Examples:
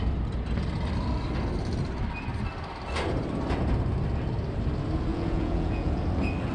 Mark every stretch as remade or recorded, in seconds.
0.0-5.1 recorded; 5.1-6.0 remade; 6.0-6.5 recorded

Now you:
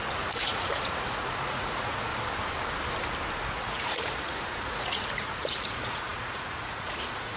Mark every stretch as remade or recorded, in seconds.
0.0-2.1 remade; 2.1-3.5 recorded; 3.5-7.4 remade

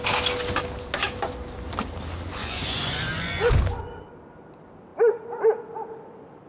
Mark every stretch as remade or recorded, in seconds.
0.0-2.4 recorded; 2.4-3.5 remade; 3.5-6.5 recorded

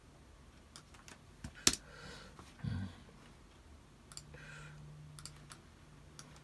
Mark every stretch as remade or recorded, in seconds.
0.0-6.4 recorded

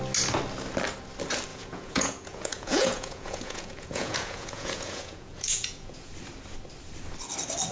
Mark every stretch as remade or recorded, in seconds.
0.0-1.5 recorded; 1.5-6.1 remade; 6.1-7.7 recorded